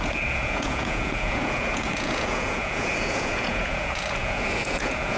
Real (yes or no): no